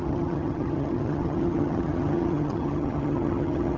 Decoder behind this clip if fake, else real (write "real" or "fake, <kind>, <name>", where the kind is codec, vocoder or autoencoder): fake, vocoder, HiFi-GAN